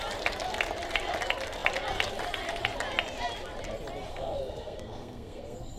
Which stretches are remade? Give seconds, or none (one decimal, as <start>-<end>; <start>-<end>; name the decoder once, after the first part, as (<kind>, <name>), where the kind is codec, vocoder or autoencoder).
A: 4.1-5.8 (codec, SNAC)

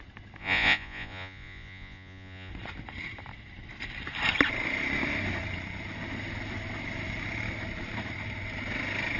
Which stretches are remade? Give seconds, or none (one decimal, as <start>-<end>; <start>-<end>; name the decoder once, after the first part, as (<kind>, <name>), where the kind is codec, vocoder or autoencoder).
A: 0.4-2.5 (vocoder, Vocos)

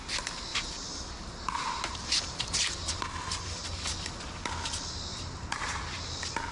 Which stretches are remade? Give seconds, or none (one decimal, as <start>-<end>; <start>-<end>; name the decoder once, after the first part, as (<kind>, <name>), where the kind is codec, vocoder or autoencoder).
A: 0.5-3.8 (vocoder, BigVGAN v2); 5.1-6.0

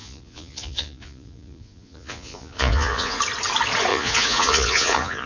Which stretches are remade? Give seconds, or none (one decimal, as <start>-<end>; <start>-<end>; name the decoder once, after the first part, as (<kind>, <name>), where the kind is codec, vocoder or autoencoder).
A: 0.0-3.2 (vocoder, Vocos); 3.9-5.3

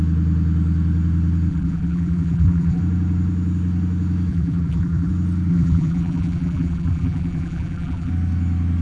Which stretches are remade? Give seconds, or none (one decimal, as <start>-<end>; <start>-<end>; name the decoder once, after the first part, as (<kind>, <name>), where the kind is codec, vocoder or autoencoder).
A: 1.5-2.8 (vocoder, BigVGAN v2); 4.3-5.1; 5.5-8.1

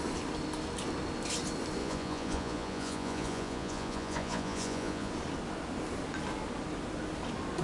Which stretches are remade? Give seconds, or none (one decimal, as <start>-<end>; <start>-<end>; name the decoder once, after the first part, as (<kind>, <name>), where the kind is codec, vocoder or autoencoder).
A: 1.8-5.1 (vocoder, Vocos)

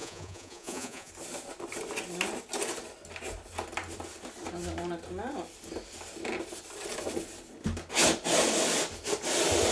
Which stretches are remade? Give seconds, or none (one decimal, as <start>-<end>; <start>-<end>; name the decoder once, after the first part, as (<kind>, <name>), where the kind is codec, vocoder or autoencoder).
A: 0.0-1.1 (vocoder, Vocos)

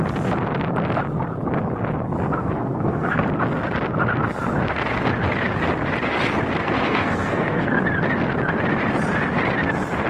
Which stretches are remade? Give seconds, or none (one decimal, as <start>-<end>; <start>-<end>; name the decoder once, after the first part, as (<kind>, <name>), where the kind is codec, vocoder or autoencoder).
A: 2.4-3.2 (codec, SNAC); 6.6-7.8